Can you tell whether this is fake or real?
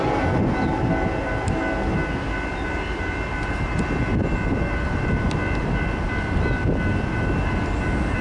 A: real